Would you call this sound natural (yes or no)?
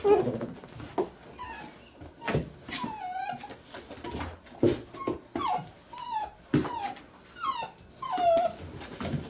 yes